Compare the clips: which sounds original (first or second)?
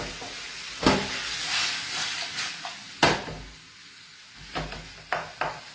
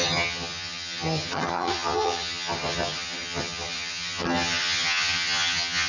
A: first